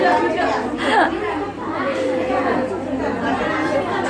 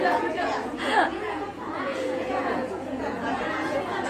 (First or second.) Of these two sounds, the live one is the first